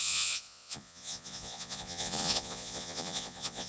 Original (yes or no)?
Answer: no